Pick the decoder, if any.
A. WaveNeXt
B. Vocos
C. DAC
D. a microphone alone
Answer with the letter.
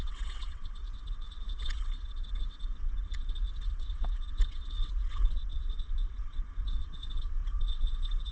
A